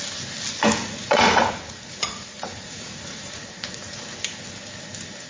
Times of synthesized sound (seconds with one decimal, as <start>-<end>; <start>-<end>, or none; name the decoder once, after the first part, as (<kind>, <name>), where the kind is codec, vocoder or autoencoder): 0.8-4.0 (vocoder, Vocos)